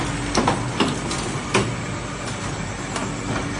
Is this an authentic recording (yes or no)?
yes